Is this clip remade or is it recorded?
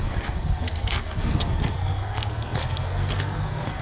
remade